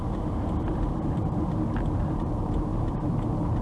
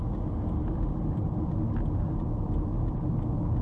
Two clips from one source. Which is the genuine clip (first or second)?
second